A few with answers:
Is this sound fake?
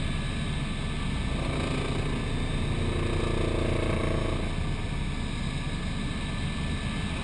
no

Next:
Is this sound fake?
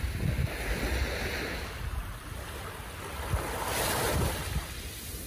no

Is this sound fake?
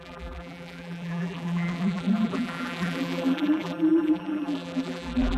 yes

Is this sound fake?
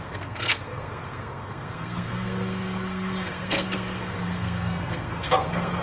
yes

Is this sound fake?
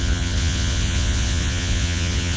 yes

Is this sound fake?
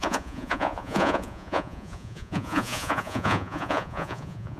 yes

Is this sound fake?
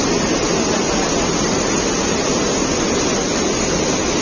no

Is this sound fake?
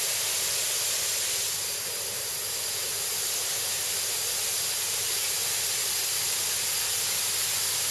no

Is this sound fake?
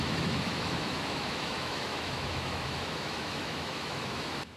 yes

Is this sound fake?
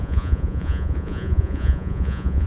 yes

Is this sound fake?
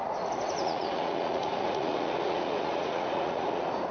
yes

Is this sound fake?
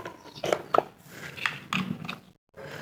no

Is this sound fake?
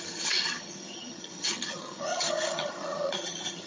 yes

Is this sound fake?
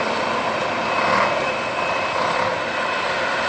no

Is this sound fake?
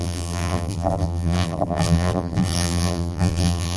yes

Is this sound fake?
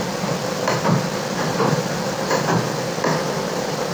no